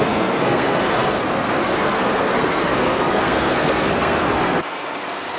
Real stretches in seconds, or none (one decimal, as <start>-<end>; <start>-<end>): none